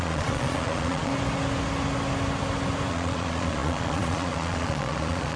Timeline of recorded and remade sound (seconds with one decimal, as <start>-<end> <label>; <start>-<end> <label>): 0.0-1.1 remade; 1.1-2.9 recorded; 2.9-5.4 remade